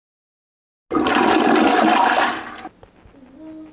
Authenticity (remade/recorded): recorded